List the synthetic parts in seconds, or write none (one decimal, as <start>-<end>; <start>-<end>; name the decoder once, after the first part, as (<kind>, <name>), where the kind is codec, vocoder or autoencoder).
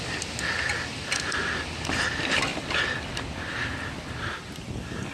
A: none